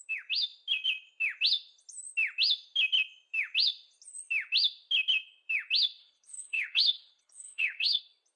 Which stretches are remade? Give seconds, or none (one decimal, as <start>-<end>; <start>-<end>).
6.0-8.0